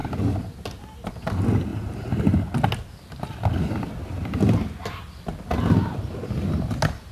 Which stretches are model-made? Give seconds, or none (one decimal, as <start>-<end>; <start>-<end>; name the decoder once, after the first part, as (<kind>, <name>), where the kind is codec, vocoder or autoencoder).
none